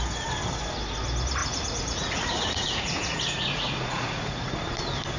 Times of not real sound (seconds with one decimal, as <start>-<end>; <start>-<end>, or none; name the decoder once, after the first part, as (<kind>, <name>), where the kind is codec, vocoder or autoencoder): 1.4-4.5 (vocoder, Vocos)